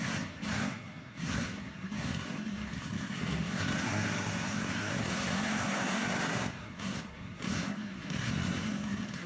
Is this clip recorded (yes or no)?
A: no